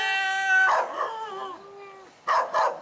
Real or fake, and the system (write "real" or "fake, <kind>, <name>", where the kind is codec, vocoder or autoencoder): real